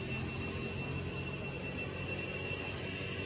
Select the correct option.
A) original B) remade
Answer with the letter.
A